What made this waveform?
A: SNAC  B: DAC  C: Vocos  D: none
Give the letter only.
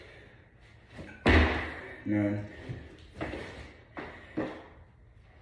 D